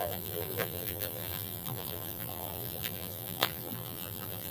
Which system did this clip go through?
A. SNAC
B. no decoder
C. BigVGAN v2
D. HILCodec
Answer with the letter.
C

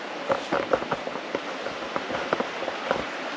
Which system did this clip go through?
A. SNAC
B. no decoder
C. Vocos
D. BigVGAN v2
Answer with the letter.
B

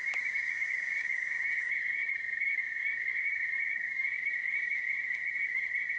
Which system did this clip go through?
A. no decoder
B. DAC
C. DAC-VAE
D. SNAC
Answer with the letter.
B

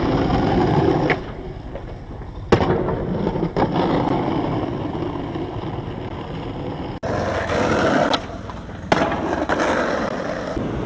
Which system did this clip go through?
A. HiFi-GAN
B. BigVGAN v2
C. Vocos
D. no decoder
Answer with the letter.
D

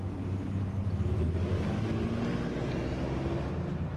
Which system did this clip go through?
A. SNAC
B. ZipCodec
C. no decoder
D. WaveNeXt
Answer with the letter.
C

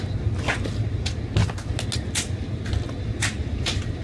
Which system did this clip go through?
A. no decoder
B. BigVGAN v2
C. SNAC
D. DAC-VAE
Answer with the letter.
A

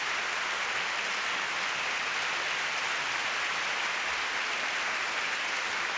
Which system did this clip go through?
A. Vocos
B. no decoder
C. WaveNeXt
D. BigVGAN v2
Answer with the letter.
B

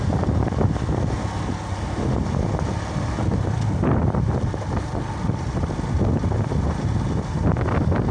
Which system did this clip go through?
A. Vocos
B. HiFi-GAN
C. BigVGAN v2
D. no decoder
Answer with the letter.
D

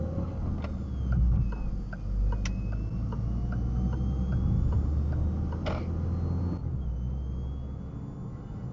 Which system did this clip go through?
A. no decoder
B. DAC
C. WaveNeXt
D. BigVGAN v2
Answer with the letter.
A